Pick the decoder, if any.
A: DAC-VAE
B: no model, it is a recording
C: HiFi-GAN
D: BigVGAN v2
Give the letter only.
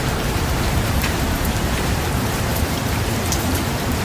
D